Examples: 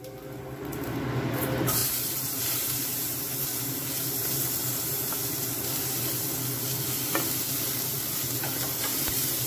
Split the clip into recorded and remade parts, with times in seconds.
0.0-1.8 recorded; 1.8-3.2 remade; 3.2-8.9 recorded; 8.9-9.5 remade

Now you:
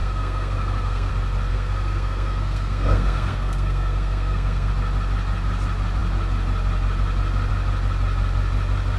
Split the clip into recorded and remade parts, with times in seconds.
0.0-1.1 remade; 1.1-1.5 recorded; 1.5-4.7 remade; 4.7-9.0 recorded

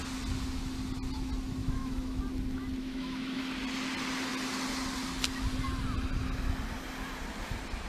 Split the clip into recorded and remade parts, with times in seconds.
0.0-1.6 recorded; 1.6-2.2 remade; 2.2-2.8 recorded; 2.8-3.4 remade; 3.4-7.9 recorded

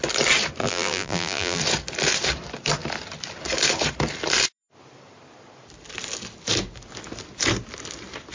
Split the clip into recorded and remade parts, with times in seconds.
0.0-0.6 recorded; 0.6-1.6 remade; 1.6-8.3 recorded